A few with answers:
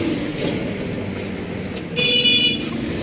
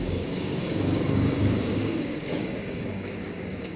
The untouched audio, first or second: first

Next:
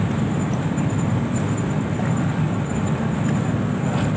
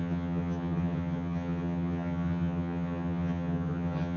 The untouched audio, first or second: first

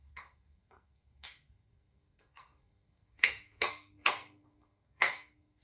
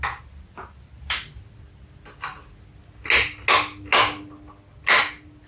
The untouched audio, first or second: second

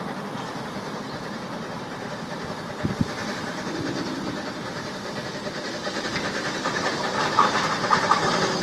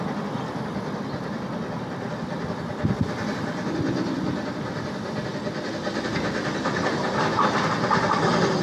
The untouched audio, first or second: second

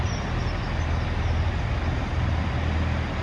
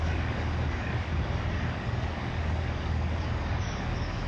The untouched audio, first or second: first